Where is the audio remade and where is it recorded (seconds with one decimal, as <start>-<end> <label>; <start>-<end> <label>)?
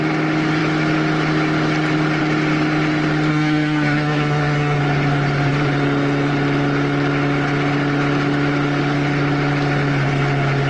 0.0-3.3 recorded; 3.3-4.8 remade; 4.8-10.7 recorded